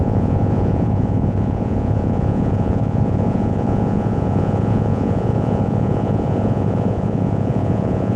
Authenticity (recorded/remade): remade